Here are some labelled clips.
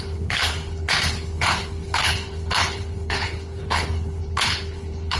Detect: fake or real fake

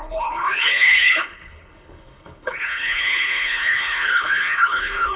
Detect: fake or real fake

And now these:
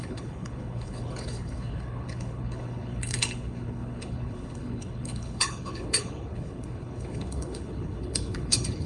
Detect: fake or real fake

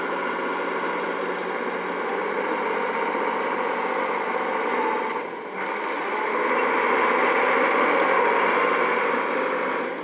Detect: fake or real real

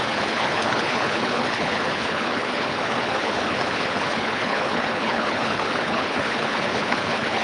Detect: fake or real fake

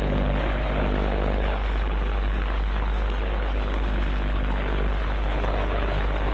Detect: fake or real fake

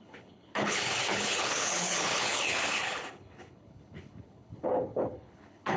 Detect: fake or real fake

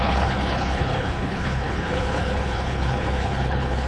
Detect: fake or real fake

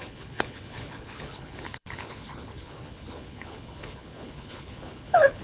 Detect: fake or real fake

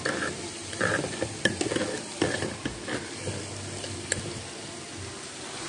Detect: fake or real real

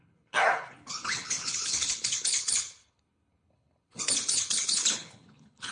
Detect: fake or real fake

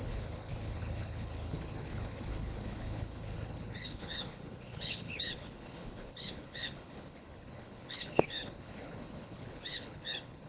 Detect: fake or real fake